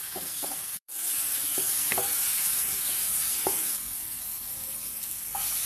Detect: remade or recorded remade